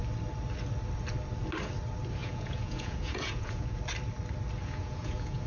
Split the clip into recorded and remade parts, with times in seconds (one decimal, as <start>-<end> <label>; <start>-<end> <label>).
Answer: 0.0-2.2 recorded; 2.2-3.8 remade; 3.8-4.6 recorded; 4.6-5.5 remade